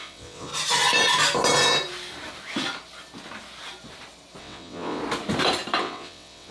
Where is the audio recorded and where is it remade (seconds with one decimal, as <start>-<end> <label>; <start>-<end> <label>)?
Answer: 0.0-0.5 remade; 0.5-4.4 recorded; 4.4-5.0 remade; 5.0-5.8 recorded; 5.8-6.5 remade